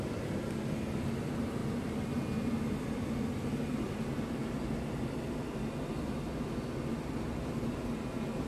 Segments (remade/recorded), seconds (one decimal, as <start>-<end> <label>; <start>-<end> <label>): 0.0-8.5 recorded

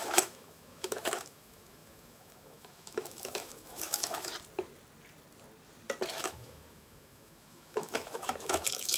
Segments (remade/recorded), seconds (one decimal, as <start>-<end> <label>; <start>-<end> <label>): 0.0-4.3 remade; 4.3-6.1 recorded; 6.1-9.0 remade

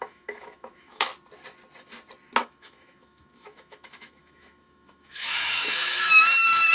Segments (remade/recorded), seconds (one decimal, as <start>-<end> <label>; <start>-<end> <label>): 0.0-1.1 remade; 1.1-2.4 recorded; 2.4-6.7 remade

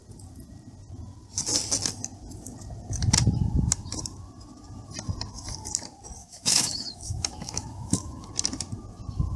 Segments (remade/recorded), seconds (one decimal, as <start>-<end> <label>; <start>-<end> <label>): 0.0-6.2 recorded; 6.2-8.3 remade; 8.3-9.4 recorded

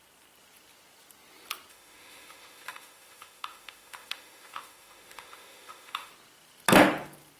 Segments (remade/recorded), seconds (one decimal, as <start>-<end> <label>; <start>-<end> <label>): 0.0-1.7 recorded; 1.7-6.1 remade; 6.1-7.4 recorded

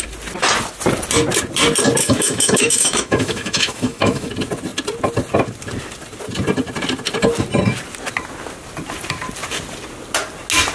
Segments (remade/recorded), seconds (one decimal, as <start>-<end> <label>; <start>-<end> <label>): 0.0-2.0 recorded; 2.0-4.3 remade; 4.3-10.7 recorded

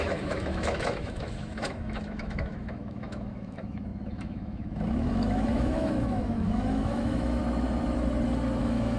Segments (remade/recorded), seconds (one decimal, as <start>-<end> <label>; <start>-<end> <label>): 0.0-7.4 remade; 7.4-8.6 recorded; 8.6-9.0 remade

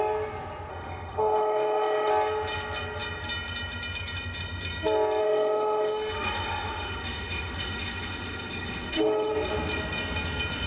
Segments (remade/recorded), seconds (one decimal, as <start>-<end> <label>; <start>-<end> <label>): 0.0-0.7 recorded; 0.7-2.1 remade; 2.1-5.2 recorded; 5.2-9.3 remade; 9.3-10.7 recorded